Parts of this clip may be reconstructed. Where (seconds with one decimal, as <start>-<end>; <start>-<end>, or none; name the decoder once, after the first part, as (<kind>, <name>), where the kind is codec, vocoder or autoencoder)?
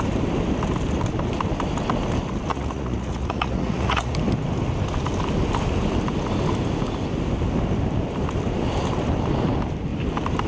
2.5-4.1 (vocoder, Vocos)